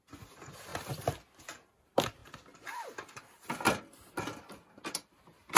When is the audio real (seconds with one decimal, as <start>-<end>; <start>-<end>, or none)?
0.0-5.6